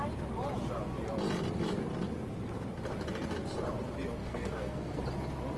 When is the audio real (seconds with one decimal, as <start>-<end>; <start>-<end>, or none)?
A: 0.0-4.2; 5.0-5.6